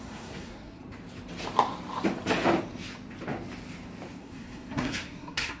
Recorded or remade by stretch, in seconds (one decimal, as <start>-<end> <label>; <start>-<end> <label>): 0.0-0.8 remade; 0.8-4.2 recorded; 4.2-5.6 remade